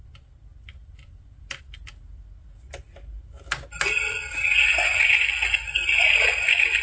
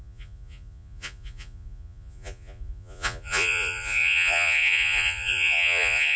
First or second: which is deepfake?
second